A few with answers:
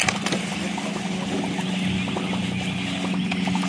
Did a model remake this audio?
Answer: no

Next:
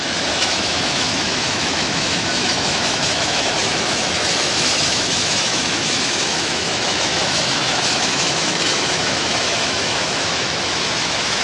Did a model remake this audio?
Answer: yes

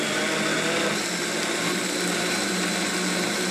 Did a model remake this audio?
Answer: no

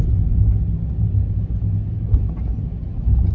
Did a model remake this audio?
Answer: no